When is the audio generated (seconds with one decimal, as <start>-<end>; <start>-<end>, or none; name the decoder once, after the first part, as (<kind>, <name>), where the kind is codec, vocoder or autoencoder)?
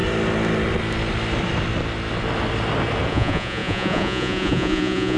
3.1-5.2 (vocoder, Vocos)